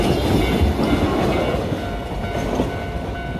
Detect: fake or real real